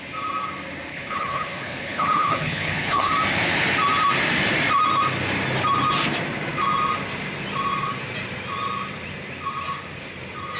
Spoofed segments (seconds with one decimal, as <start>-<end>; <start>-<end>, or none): 0.9-3.1